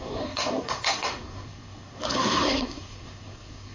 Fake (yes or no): yes